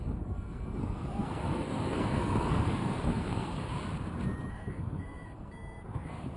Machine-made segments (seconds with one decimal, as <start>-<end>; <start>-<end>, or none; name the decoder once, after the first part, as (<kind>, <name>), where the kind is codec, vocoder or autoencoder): 0.0-3.7 (codec, SNAC); 4.5-6.4